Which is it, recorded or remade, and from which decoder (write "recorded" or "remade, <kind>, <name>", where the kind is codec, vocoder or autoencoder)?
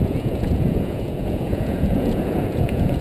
remade, vocoder, Vocos